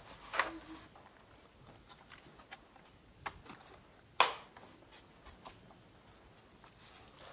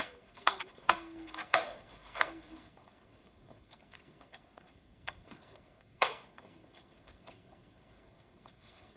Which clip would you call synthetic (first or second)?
second